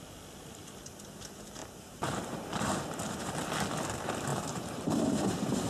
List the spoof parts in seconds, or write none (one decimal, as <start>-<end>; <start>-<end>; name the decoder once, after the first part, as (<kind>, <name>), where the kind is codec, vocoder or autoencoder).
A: 1.6-3.3 (vocoder, BigVGAN v2); 4.3-5.7